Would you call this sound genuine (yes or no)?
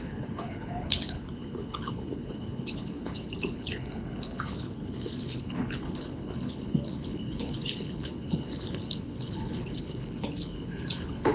no